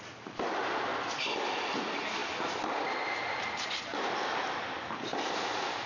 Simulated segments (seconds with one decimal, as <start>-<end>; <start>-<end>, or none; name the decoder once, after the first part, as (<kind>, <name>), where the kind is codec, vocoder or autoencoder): none